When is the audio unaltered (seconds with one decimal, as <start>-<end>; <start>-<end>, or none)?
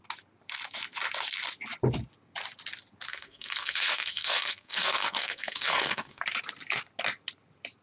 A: 0.0-3.1; 6.2-7.8